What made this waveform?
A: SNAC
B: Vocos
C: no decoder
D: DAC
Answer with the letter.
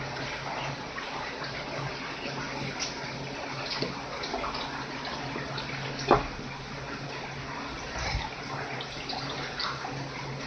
C